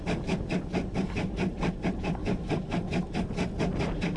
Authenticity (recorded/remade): recorded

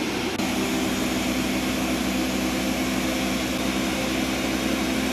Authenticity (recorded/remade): recorded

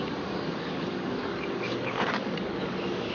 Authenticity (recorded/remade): remade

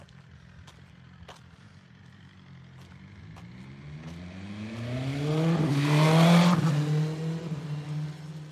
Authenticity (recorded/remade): recorded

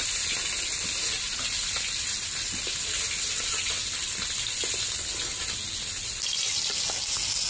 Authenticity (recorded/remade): recorded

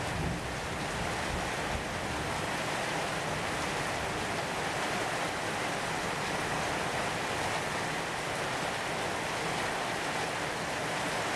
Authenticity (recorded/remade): recorded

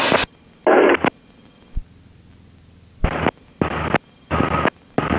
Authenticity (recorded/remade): recorded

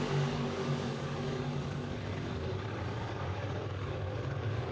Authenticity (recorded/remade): remade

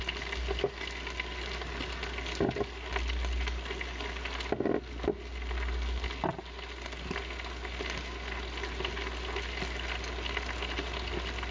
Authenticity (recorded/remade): recorded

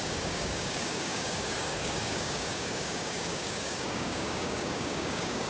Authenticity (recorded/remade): remade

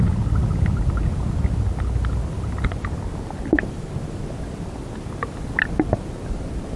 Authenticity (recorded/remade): recorded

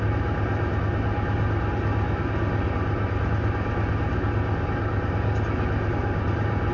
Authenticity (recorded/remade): recorded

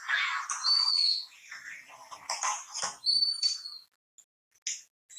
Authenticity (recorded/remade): recorded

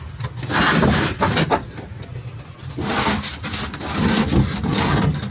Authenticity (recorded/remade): recorded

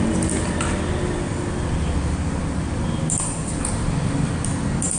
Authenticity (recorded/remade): recorded